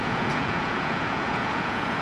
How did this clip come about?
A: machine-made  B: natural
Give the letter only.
A